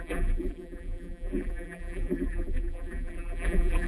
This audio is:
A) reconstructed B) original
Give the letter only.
A